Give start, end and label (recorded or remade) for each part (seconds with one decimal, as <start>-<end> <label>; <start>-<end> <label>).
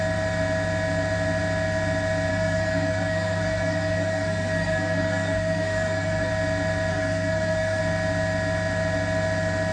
0.0-2.3 recorded; 2.3-6.3 remade; 6.3-6.9 recorded; 6.9-7.8 remade; 7.8-9.7 recorded